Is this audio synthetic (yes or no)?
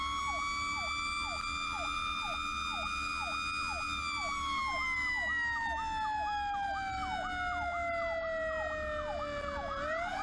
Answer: no